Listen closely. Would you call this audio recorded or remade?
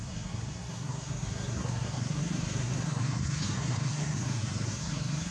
remade